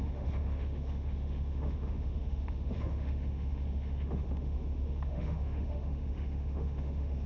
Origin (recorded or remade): remade